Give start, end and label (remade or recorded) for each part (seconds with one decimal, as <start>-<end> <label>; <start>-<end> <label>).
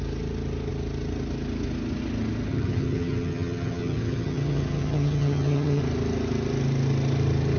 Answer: 0.0-2.5 recorded; 2.5-5.8 remade; 5.8-7.6 recorded